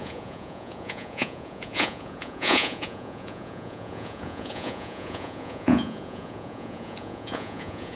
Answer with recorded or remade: remade